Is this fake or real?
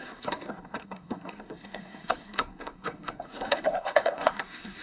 fake